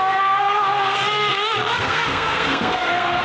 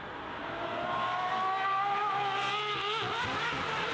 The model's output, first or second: first